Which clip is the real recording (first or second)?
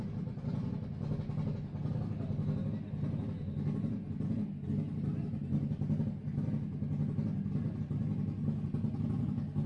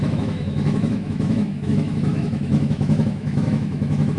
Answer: first